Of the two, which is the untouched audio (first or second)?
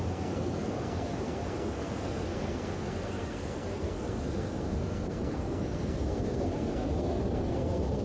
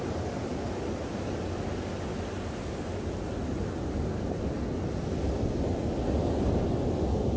second